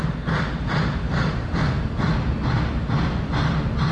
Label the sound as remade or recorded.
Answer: recorded